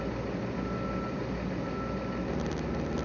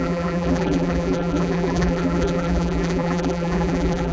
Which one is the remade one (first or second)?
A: second